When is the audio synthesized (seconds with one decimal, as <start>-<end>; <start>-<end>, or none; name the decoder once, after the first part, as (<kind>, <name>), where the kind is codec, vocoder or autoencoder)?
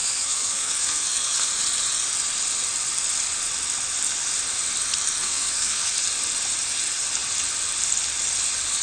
0.0-1.5 (codec, SNAC); 5.2-5.9